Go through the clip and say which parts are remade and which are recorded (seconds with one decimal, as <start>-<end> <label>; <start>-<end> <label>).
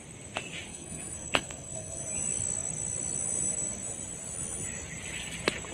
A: 0.0-0.7 recorded; 0.7-2.0 remade; 2.0-5.7 recorded